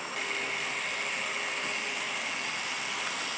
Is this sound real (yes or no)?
yes